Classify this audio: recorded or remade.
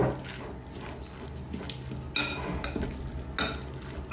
recorded